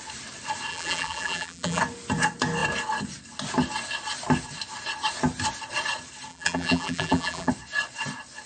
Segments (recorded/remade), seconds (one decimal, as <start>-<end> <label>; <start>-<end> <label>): 0.0-0.7 recorded; 0.7-1.8 remade; 1.8-6.3 recorded; 6.3-7.5 remade; 7.5-8.5 recorded